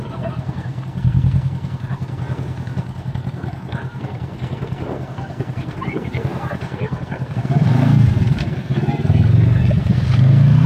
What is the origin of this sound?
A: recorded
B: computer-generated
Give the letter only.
B